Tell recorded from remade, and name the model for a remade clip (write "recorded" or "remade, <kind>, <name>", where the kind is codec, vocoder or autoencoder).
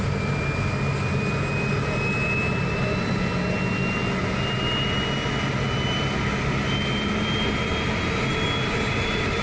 recorded